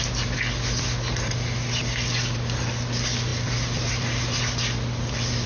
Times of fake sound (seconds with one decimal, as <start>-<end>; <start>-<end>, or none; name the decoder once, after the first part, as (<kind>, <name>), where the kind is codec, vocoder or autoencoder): none